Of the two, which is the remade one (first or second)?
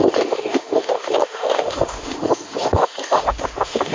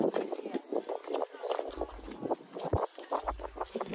first